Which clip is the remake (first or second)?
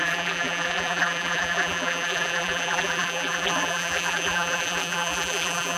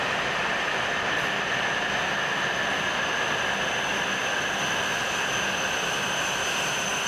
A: first